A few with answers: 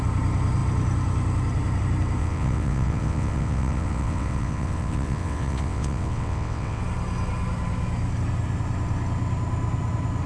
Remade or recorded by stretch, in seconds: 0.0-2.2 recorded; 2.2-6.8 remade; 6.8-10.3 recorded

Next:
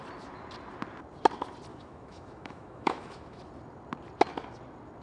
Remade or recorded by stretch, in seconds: 0.0-1.7 recorded; 1.7-3.4 remade; 3.4-5.0 recorded

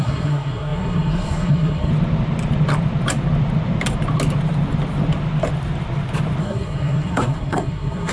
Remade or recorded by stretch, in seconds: 0.0-1.9 remade; 1.9-6.4 recorded; 6.4-8.1 remade

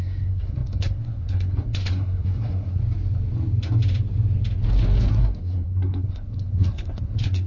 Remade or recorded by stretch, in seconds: 0.0-2.8 remade; 2.8-5.1 recorded; 5.1-7.5 remade